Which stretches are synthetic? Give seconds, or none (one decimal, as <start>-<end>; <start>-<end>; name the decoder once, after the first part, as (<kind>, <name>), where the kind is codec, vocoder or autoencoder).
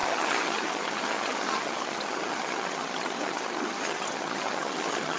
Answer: 0.0-5.2 (vocoder, HiFi-GAN)